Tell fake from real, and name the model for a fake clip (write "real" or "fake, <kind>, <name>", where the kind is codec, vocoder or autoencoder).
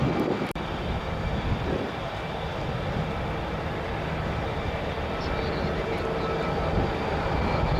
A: real